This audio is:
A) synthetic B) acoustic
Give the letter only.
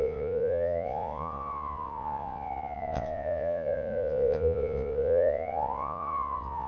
A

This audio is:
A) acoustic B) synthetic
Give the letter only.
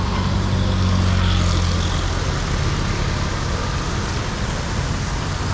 A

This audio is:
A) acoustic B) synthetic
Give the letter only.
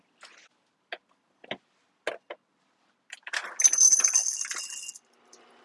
A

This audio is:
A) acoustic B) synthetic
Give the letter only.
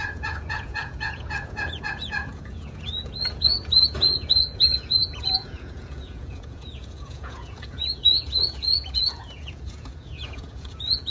B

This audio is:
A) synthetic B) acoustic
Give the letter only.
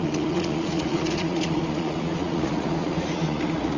A